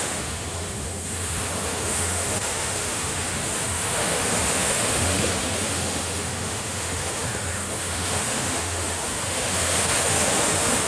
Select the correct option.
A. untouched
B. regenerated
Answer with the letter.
B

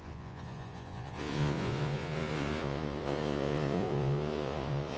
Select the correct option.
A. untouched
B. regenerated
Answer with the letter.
B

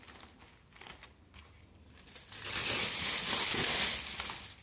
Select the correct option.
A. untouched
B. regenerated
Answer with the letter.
A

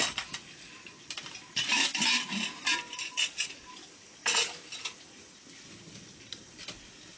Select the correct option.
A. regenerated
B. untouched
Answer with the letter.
B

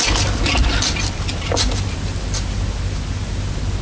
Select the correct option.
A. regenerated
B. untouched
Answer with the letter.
B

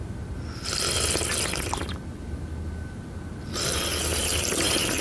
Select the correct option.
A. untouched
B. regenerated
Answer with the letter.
A